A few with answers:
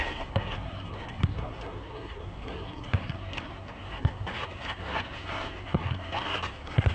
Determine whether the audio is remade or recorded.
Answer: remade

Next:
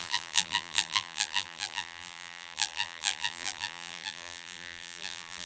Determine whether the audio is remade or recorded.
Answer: remade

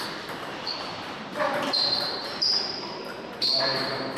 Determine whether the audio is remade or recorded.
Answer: remade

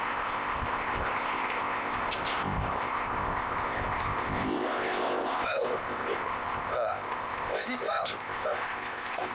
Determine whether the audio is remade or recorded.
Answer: remade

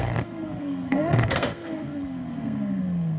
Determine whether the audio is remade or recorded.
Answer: remade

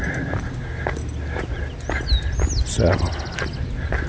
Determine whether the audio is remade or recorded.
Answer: recorded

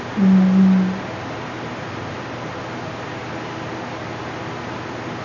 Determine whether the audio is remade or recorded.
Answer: recorded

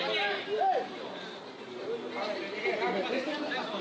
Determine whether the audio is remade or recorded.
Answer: recorded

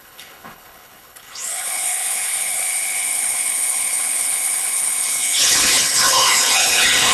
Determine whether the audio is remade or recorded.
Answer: remade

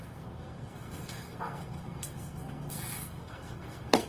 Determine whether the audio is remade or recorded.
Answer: remade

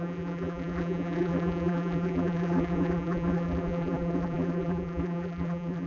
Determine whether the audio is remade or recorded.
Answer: remade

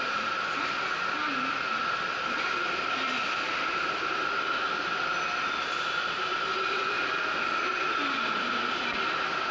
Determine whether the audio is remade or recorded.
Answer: recorded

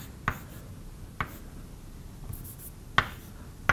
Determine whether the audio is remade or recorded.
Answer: recorded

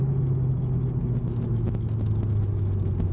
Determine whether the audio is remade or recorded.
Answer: recorded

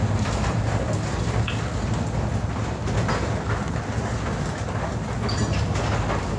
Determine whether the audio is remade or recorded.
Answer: recorded